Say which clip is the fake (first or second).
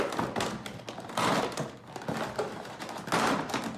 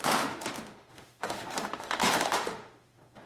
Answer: second